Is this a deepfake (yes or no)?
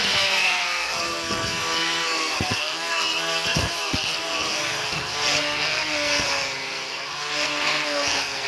yes